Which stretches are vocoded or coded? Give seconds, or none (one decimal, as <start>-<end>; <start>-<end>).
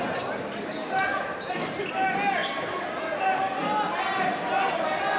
none